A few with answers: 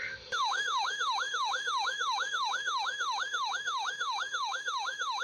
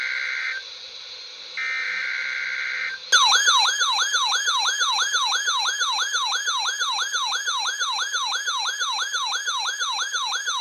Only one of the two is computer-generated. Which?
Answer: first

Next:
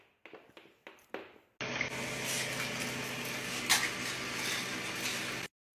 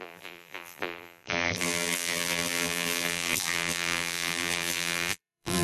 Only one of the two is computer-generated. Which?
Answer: second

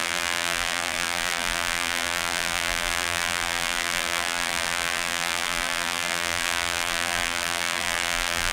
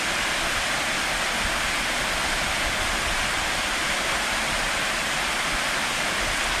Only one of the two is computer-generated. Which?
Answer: first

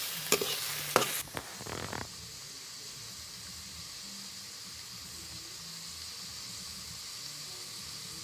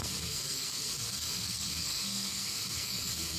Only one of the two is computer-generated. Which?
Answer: second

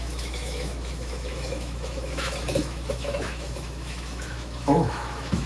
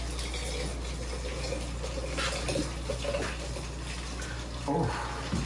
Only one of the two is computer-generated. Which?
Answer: first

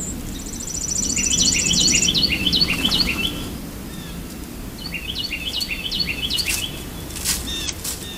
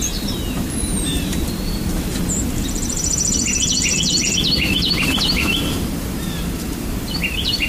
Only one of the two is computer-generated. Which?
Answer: second